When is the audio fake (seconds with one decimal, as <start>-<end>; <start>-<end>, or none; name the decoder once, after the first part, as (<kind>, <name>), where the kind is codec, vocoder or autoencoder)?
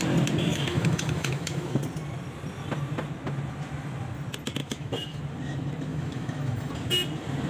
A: 0.5-1.8 (autoencoder, DAC-VAE); 4.6-5.2; 5.9-6.7